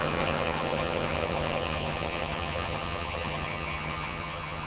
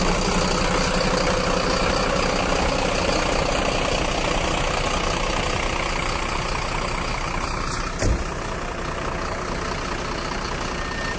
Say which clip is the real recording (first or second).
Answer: second